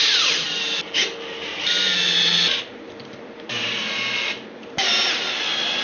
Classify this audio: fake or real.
real